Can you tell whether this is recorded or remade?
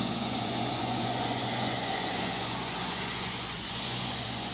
remade